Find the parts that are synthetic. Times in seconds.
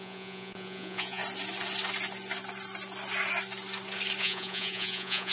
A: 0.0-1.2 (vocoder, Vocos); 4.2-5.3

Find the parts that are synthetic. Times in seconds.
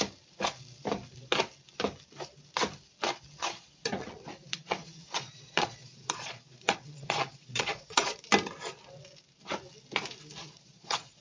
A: 3.4-8.2 (vocoder, Vocos); 10.4-11.2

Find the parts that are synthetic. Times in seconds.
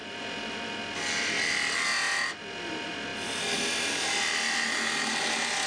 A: none